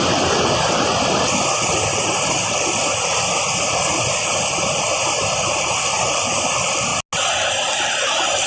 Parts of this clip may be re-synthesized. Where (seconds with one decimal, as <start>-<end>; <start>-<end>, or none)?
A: none